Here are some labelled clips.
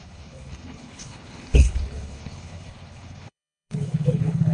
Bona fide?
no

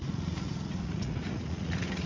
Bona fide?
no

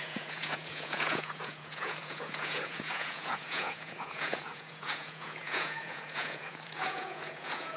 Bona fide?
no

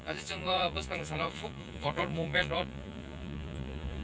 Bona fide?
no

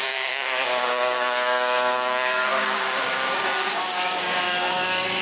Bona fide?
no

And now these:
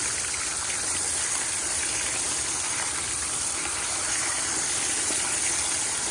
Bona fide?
yes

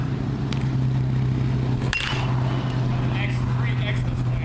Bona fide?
yes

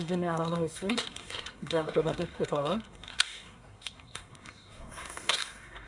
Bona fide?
no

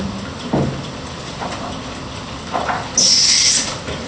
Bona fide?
yes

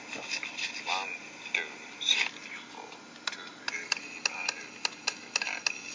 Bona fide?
yes